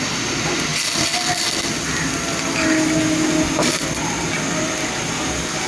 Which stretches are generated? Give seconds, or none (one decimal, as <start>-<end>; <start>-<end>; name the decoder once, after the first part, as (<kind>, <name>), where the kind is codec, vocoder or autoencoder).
none